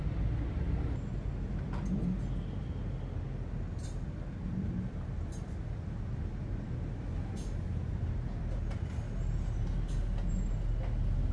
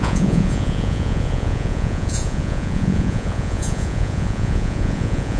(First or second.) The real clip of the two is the first